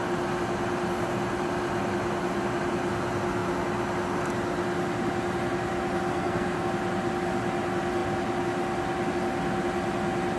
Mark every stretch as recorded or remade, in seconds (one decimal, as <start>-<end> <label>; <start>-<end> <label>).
0.0-6.1 recorded; 6.1-6.7 remade; 6.7-10.4 recorded